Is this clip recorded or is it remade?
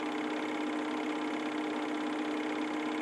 recorded